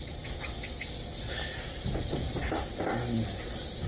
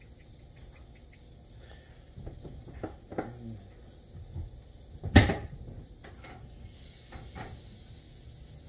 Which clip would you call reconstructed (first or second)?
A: first